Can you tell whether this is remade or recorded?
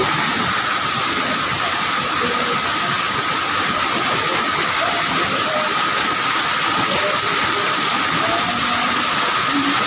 recorded